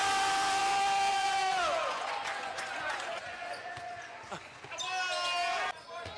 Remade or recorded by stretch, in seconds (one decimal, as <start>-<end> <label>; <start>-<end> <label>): 0.0-1.1 recorded; 1.1-4.6 remade; 4.6-6.2 recorded

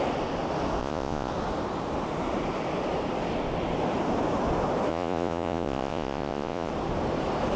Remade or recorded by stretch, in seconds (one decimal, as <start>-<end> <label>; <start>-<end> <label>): 0.0-0.8 recorded; 0.8-1.3 remade; 1.3-4.9 recorded; 4.9-6.7 remade; 6.7-7.6 recorded

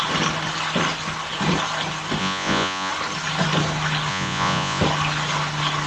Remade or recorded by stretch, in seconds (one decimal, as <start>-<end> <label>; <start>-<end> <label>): 0.0-2.2 recorded; 2.2-2.9 remade; 2.9-4.1 recorded; 4.1-4.8 remade; 4.8-5.9 recorded

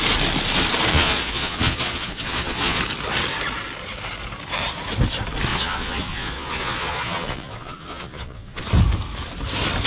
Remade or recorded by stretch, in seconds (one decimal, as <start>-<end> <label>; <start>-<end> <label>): 0.0-0.9 recorded; 0.9-2.8 remade; 2.8-5.5 recorded; 5.5-8.6 remade; 8.6-9.9 recorded

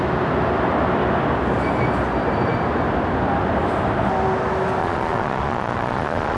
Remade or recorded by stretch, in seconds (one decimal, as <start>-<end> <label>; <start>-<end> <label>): 0.0-4.8 recorded; 4.8-6.4 remade

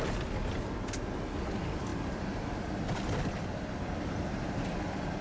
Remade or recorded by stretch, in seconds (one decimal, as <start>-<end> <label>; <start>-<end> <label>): 0.0-5.2 recorded

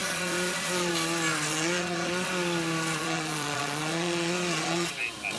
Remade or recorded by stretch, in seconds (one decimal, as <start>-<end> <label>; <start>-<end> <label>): 0.0-0.9 remade; 0.9-1.5 recorded; 1.5-2.3 remade; 2.3-3.0 recorded; 3.0-4.9 remade; 4.9-5.4 recorded

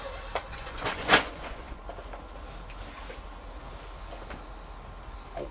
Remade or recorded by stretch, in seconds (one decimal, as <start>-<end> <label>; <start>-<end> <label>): 0.0-0.5 recorded; 0.5-1.8 remade; 1.8-5.5 recorded